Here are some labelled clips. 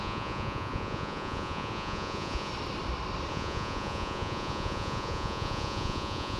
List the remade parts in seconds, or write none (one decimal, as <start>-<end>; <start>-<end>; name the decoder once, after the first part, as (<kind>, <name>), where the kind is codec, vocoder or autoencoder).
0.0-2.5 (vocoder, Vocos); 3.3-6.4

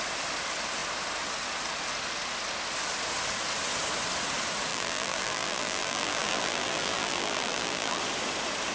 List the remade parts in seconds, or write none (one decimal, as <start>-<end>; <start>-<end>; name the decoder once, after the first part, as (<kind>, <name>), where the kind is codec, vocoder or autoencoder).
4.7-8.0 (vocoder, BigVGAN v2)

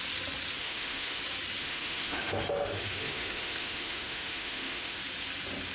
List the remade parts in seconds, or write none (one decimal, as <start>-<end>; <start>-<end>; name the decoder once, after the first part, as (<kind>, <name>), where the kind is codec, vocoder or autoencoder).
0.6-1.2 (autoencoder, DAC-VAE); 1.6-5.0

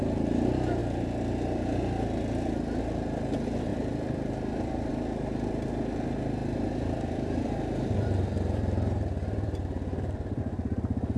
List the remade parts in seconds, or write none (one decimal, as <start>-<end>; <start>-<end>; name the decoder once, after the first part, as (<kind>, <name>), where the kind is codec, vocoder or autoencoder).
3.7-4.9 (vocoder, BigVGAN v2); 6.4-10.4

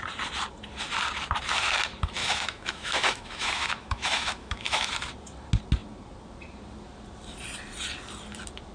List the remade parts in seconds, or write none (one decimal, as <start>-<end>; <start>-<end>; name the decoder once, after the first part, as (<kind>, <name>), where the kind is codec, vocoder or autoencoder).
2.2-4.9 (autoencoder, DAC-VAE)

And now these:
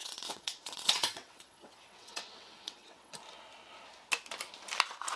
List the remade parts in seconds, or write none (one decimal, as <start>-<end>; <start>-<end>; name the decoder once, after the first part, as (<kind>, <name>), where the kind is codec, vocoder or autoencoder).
0.0-3.1 (vocoder, WaveNeXt)